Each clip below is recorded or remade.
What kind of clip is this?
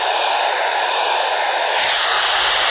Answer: recorded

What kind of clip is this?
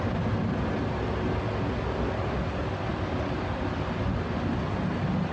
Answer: recorded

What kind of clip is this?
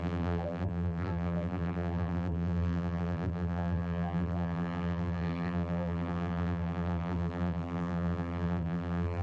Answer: remade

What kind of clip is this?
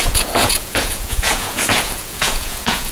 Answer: remade